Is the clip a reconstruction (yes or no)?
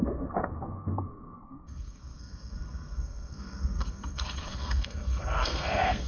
yes